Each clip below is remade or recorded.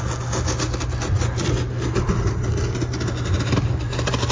recorded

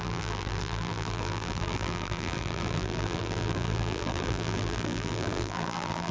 remade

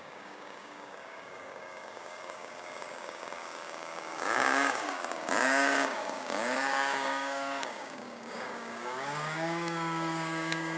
remade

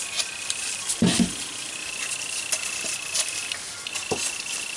recorded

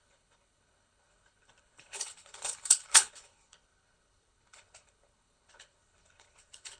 remade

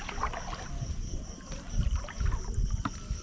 recorded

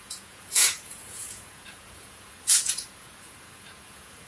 remade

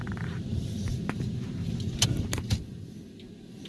recorded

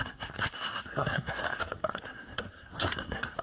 remade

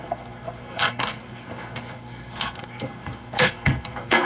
remade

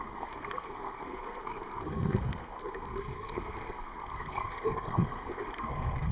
remade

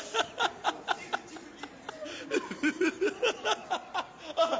recorded